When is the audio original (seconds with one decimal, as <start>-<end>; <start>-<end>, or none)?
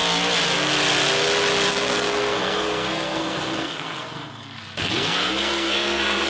0.0-1.7